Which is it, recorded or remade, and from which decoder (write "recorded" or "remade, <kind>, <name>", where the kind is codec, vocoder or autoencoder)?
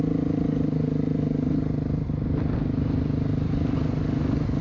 recorded